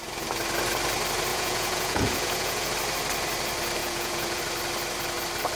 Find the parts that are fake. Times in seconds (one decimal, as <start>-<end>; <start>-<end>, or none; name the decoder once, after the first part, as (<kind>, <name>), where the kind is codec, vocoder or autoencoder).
1.3-2.7 (vocoder, Vocos); 3.8-4.4